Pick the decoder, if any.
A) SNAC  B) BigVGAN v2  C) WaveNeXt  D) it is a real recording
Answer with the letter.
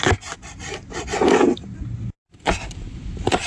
D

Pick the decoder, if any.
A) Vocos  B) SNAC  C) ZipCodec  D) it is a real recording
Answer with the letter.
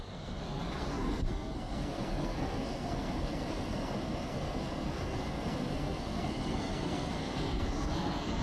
B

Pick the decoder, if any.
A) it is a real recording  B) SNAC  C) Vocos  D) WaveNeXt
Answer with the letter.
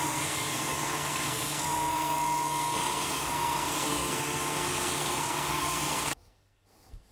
B